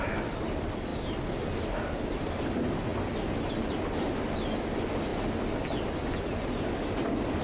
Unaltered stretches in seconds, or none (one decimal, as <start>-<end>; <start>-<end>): 0.0-7.4